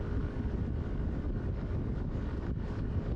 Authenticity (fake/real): fake